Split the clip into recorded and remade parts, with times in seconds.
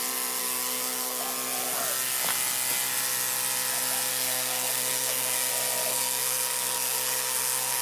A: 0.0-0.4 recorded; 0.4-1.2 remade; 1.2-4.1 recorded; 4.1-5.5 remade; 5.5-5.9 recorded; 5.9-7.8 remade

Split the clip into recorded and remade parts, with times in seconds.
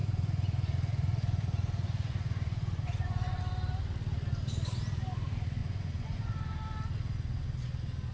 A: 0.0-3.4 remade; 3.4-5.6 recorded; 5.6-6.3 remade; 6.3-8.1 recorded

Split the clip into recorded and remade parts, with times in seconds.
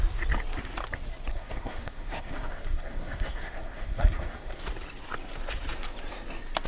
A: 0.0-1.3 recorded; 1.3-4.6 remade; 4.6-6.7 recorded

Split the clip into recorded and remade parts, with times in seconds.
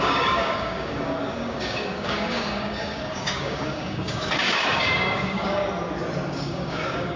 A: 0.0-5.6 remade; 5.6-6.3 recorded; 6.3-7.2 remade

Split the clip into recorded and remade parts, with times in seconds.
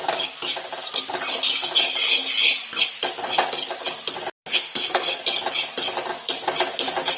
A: 0.0-4.5 recorded; 4.5-5.2 remade; 5.2-7.2 recorded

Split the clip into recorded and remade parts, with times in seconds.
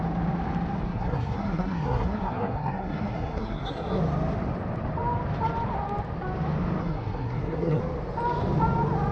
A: 0.0-0.9 recorded; 0.9-4.0 remade; 4.0-6.8 recorded; 6.8-7.8 remade; 7.8-9.1 recorded